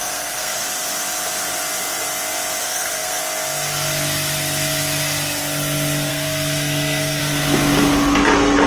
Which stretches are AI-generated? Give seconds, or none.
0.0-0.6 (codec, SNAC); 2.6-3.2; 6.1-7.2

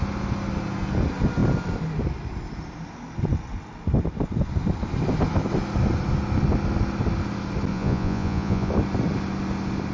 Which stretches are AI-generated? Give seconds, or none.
7.7-8.7 (vocoder, Vocos)

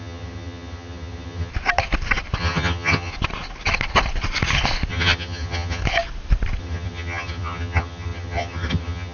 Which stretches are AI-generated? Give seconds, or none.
0.0-1.5 (vocoder, HiFi-GAN); 2.4-3.1; 4.9-5.8; 6.6-9.1

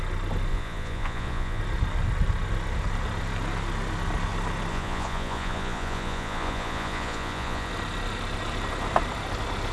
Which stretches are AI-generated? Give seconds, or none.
0.5-1.6 (vocoder, Vocos); 4.7-7.7

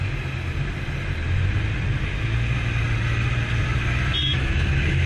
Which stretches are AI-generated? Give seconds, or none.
4.2-5.1 (autoencoder, DAC-VAE)

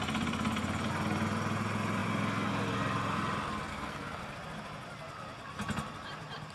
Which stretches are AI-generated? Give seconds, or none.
3.7-4.2 (codec, SNAC)

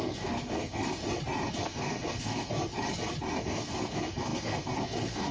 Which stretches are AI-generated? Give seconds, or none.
0.0-1.0 (codec, SNAC); 1.6-2.5; 3.4-5.3

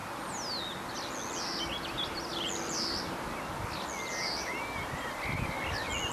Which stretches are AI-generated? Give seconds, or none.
none